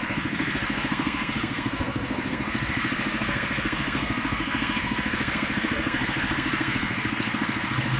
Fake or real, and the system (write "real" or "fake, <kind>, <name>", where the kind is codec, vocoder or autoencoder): fake, codec, SNAC